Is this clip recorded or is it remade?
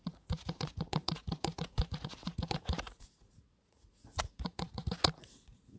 remade